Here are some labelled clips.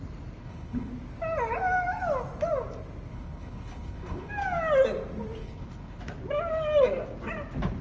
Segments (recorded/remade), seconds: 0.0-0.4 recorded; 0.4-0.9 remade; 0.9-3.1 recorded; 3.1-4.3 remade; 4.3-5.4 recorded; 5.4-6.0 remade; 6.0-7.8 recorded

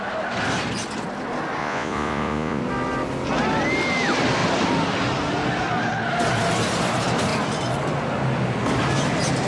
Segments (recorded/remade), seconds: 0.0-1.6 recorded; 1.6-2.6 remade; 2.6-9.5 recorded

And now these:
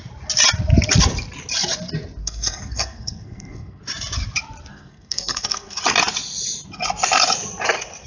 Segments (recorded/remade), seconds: 0.0-2.2 recorded; 2.2-3.8 remade; 3.8-4.7 recorded; 4.7-5.8 remade; 5.8-8.1 recorded

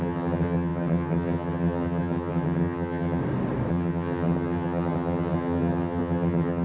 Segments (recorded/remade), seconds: 0.0-3.2 remade; 3.2-3.7 recorded; 3.7-6.6 remade